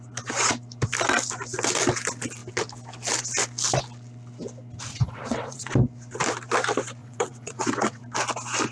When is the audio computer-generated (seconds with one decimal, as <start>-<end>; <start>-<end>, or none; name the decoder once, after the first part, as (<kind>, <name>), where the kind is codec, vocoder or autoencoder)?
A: 4.9-5.7 (vocoder, WaveNeXt); 7.0-8.0